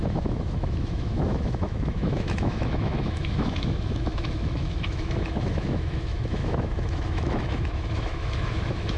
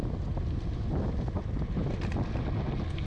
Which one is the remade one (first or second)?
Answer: first